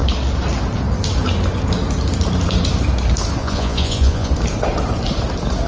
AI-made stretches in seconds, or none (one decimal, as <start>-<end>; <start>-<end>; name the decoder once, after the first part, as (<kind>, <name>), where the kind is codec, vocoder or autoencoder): 3.4-4.3 (vocoder, Vocos)